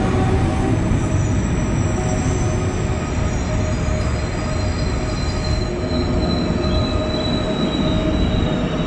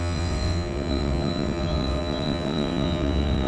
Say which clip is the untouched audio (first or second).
first